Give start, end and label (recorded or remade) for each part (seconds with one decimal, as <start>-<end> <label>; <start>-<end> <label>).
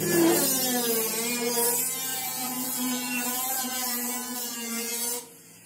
0.0-2.1 recorded; 2.1-5.7 remade